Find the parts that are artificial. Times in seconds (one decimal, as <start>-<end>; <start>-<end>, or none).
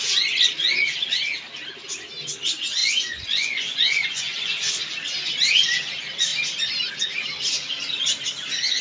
2.8-4.8